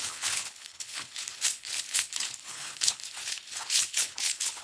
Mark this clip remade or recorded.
remade